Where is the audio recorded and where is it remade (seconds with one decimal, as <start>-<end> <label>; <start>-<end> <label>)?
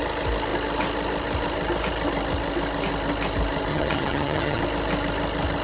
0.0-3.7 recorded; 3.7-4.6 remade; 4.6-5.6 recorded